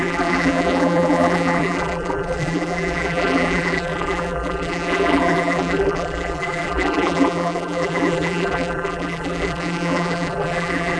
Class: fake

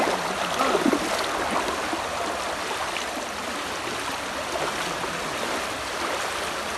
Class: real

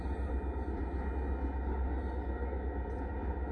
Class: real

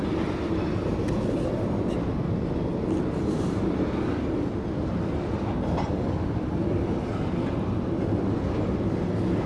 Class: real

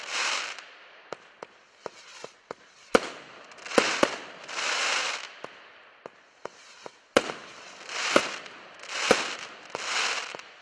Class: fake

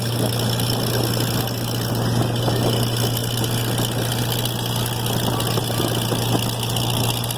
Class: real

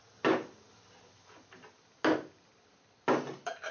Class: real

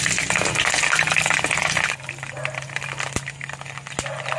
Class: real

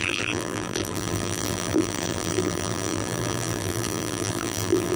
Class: fake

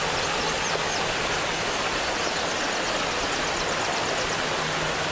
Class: real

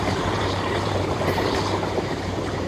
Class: fake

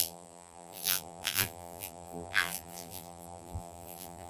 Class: fake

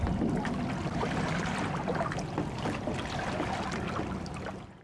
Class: real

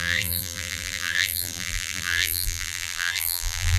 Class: fake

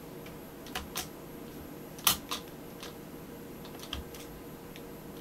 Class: real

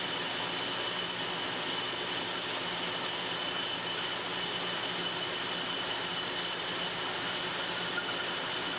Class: real